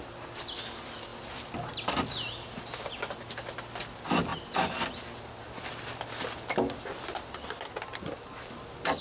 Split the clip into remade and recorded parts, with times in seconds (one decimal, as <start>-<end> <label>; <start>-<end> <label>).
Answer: 0.0-9.0 recorded

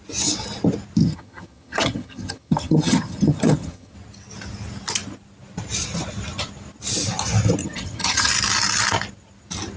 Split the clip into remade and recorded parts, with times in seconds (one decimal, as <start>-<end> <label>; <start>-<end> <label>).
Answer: 0.0-1.0 recorded; 1.0-3.9 remade; 3.9-7.6 recorded; 7.6-8.3 remade; 8.3-9.8 recorded

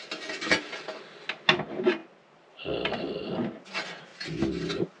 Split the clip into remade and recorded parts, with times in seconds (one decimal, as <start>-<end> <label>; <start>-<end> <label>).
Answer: 0.0-5.0 recorded

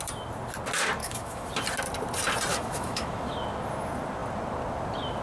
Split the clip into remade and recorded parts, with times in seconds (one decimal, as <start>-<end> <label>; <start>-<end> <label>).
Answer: 0.0-1.0 recorded; 1.0-1.5 remade; 1.5-2.5 recorded; 2.5-3.3 remade; 3.3-5.2 recorded

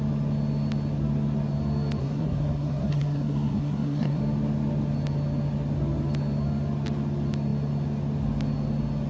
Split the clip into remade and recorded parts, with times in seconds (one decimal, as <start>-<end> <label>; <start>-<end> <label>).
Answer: 0.0-2.0 recorded; 2.0-4.2 remade; 4.2-9.1 recorded

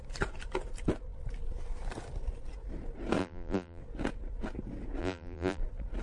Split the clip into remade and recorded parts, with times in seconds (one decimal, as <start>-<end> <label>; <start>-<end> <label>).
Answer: 0.0-3.2 recorded; 3.2-3.8 remade; 3.8-5.0 recorded; 5.0-5.6 remade; 5.6-6.0 recorded

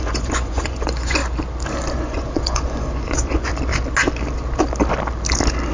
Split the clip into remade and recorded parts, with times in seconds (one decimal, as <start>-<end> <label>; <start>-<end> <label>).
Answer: 0.0-1.2 remade; 1.2-2.0 recorded; 2.0-3.5 remade; 3.5-5.7 recorded

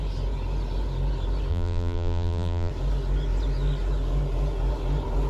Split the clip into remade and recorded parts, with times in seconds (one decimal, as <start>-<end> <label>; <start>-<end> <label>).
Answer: 0.0-1.5 recorded; 1.5-2.7 remade; 2.7-5.3 recorded